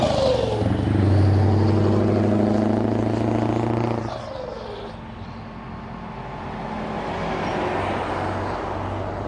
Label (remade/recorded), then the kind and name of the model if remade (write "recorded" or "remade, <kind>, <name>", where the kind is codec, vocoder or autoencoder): recorded